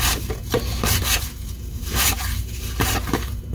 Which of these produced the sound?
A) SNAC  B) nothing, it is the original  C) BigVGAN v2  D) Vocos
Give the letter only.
C